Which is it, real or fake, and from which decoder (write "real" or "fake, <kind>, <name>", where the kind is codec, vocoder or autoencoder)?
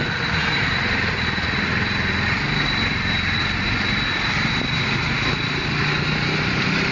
real